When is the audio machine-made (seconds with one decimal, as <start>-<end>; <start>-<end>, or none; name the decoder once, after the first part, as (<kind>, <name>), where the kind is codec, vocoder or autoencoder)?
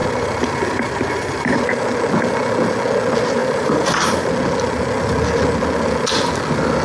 0.0-1.6 (vocoder, BigVGAN v2); 3.4-4.3